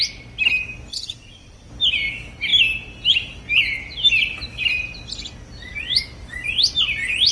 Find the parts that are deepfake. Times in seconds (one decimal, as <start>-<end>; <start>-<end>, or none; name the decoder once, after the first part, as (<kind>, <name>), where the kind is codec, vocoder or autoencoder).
0.9-1.7 (vocoder, WaveNeXt)